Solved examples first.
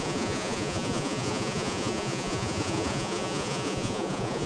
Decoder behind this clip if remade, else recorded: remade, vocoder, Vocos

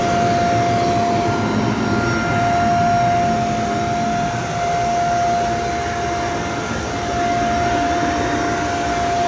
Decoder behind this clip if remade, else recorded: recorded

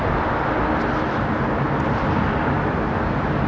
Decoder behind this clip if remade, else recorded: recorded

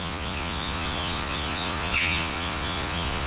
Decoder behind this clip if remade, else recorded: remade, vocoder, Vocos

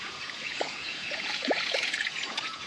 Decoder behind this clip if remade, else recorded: remade, vocoder, Vocos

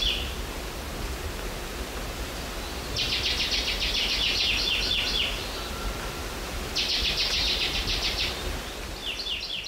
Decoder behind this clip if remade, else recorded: recorded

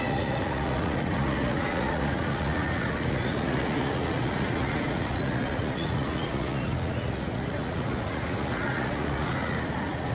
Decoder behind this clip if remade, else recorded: remade, vocoder, Vocos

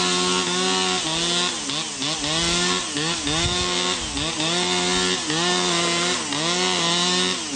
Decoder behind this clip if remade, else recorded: recorded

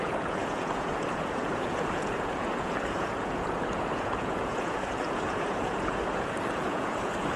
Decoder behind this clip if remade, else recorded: remade, vocoder, Vocos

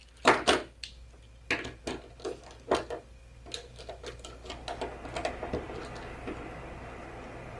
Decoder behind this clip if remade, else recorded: recorded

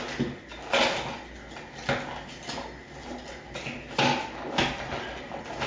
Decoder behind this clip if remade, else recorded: recorded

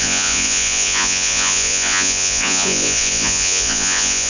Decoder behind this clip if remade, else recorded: remade, vocoder, Vocos